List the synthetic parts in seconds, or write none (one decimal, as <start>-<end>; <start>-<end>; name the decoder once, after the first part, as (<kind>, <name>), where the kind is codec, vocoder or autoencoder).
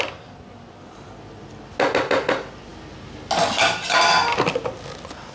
none